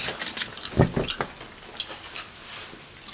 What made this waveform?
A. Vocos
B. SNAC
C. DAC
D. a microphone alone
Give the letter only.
D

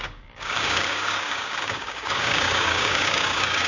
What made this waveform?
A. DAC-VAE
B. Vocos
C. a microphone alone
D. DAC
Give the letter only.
D